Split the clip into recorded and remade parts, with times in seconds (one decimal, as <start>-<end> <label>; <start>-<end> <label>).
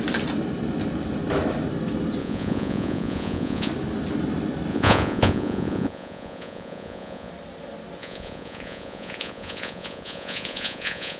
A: 0.0-2.2 recorded; 2.2-3.7 remade; 3.7-4.7 recorded; 4.7-7.3 remade; 7.3-8.0 recorded; 8.0-11.2 remade